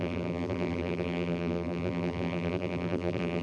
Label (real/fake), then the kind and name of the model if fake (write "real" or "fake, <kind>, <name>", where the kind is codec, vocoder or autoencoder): fake, vocoder, BigVGAN v2